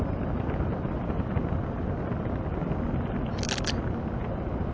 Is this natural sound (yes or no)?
yes